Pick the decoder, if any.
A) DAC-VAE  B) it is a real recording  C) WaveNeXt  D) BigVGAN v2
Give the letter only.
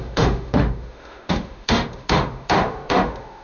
A